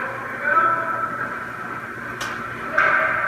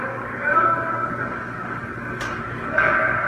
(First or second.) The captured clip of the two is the first